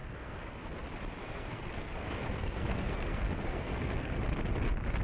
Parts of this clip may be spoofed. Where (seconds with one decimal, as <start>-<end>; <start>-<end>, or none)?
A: 0.0-0.7; 1.2-4.2